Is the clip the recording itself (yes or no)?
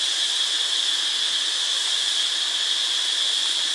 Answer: yes